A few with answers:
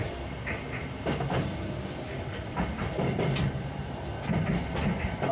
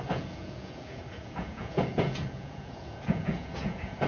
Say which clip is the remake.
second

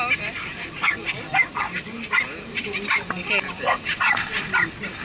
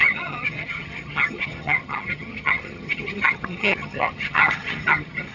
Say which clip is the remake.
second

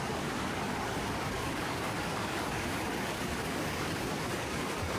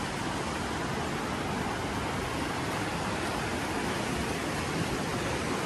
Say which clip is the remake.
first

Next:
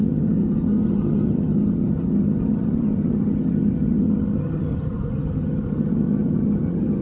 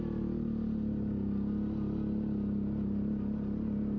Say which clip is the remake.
first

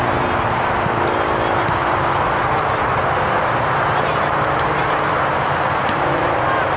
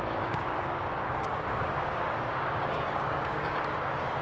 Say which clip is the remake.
second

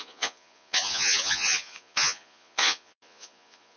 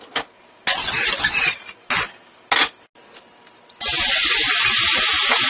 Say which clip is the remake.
first